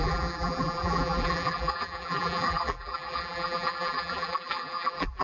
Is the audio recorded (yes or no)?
no